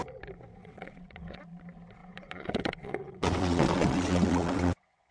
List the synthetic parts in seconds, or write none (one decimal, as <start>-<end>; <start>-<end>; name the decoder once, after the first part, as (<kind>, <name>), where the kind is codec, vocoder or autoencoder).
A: 0.6-1.4 (vocoder, WaveNeXt); 2.0-5.1